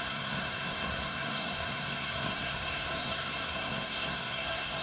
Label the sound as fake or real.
fake